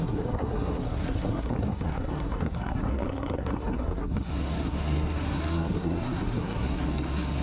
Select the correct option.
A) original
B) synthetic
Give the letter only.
B